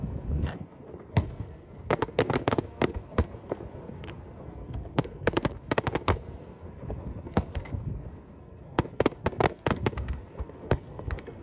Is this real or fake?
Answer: fake